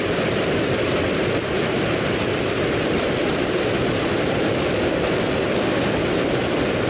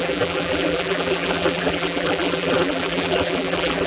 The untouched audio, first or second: first